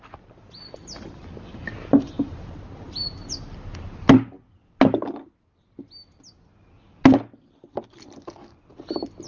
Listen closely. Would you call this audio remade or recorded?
recorded